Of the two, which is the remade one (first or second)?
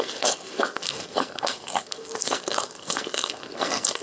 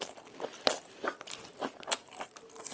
first